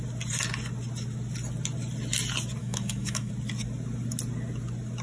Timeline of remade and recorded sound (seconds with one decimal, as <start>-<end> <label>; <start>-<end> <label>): 0.0-2.6 recorded; 2.6-3.3 remade; 3.3-5.0 recorded